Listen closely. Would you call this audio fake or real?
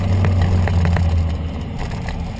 real